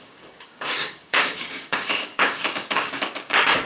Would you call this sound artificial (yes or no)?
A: yes